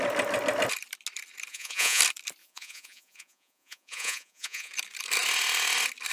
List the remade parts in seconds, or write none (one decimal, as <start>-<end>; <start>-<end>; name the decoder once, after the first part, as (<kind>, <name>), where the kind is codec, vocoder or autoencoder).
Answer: 1.5-2.0 (vocoder, Vocos); 2.4-4.7

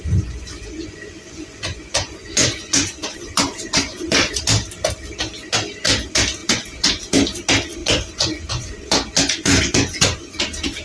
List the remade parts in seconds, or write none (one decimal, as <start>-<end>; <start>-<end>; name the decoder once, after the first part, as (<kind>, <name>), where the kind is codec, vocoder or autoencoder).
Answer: 0.0-4.4 (vocoder, Vocos); 6.4-7.0; 7.8-10.4

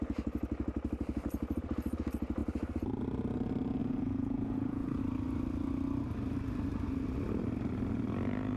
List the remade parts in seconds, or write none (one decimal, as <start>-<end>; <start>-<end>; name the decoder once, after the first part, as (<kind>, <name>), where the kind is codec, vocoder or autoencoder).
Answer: 3.8-5.0 (vocoder, Vocos)

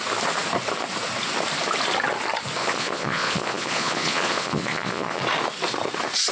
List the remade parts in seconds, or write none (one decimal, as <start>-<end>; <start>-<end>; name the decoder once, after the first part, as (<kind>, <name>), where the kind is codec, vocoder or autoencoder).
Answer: 2.6-5.2 (vocoder, Vocos)